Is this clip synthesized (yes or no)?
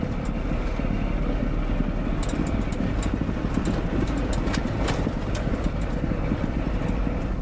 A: no